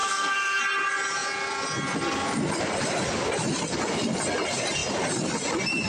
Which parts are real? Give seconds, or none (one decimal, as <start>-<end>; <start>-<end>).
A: 0.6-5.9